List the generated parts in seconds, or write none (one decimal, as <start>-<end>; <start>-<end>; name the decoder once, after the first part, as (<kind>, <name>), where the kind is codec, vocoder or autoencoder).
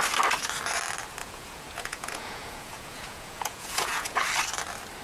1.2-4.2 (vocoder, Vocos)